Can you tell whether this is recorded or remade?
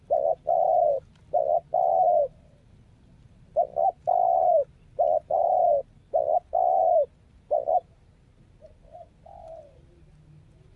recorded